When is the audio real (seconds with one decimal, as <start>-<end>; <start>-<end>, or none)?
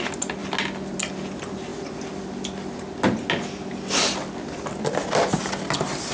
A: 0.0-6.1